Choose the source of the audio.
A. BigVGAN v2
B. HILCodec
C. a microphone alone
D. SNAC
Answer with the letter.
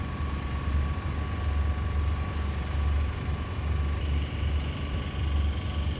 C